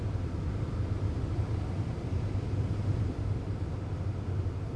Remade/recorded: recorded